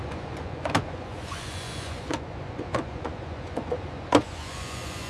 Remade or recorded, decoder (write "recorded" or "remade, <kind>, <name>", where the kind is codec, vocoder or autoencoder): remade, vocoder, Vocos